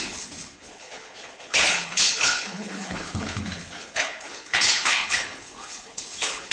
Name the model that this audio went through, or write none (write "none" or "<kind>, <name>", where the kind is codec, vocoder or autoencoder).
codec, HILCodec